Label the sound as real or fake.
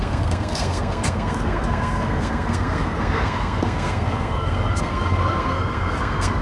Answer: fake